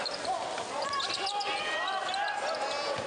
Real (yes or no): yes